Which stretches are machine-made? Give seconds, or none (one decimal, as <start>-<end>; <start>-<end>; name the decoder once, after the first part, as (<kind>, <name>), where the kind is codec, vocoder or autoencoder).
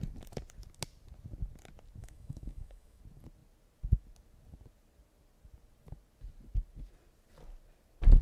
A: 2.0-3.0 (autoencoder, DAC-VAE)